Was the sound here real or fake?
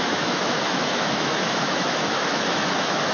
fake